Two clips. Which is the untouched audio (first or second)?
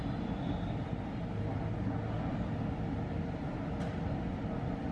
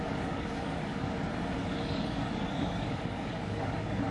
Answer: first